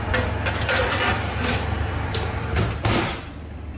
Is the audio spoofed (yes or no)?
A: yes